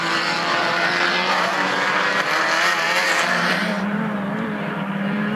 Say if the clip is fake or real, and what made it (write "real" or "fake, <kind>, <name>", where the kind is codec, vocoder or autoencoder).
fake, vocoder, BigVGAN v2